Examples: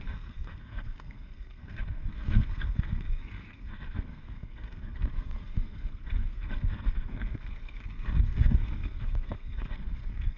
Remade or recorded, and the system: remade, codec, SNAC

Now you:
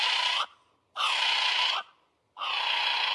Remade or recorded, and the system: recorded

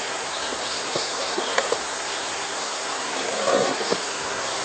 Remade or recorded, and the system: remade, codec, SNAC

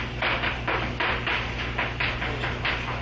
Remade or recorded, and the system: recorded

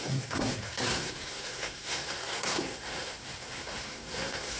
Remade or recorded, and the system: remade, codec, SNAC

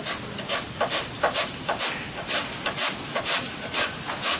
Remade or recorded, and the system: recorded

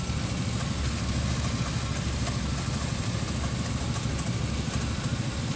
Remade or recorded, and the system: recorded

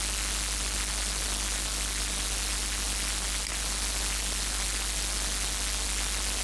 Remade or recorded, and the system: recorded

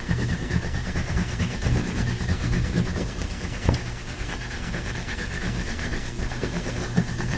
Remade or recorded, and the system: remade, codec, SNAC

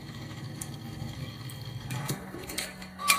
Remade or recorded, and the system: remade, codec, SNAC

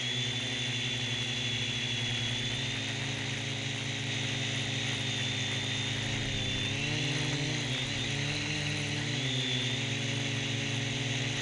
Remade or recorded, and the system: recorded